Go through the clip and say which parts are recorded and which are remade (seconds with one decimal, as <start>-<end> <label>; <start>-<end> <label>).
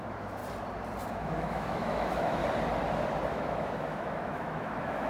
0.0-0.4 remade; 0.4-1.1 recorded; 1.1-2.4 remade; 2.4-3.3 recorded; 3.3-5.1 remade